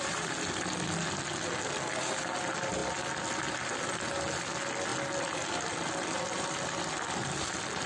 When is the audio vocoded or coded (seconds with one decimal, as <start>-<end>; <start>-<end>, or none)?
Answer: none